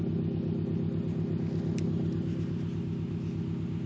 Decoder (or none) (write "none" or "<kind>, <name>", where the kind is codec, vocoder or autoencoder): none